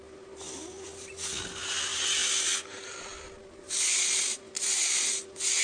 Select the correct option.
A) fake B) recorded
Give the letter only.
B